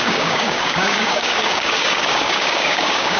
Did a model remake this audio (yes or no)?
yes